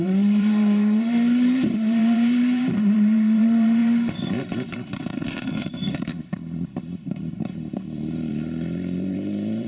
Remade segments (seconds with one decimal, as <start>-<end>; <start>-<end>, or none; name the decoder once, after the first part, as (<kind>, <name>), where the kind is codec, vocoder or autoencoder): 0.0-9.7 (vocoder, BigVGAN v2)